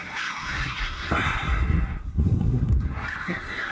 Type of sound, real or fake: fake